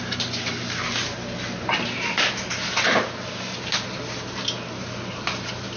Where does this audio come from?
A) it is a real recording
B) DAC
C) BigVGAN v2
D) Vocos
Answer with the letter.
A